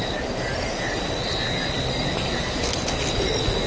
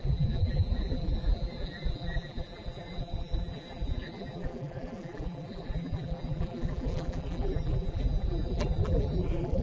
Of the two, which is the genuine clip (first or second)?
first